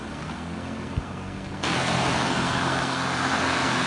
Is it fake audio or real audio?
fake